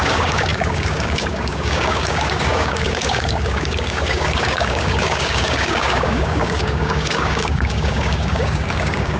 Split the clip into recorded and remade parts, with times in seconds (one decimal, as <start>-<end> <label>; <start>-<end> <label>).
0.0-9.2 remade